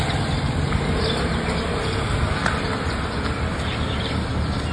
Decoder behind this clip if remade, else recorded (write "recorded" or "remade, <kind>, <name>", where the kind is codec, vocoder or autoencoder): recorded